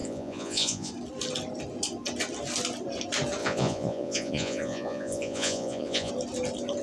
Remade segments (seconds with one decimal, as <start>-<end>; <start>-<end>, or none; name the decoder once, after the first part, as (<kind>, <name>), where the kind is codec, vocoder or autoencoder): 0.0-0.9 (vocoder, Vocos); 3.4-6.1